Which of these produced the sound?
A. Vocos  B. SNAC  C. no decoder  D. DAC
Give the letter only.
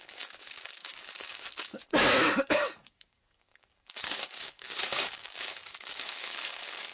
D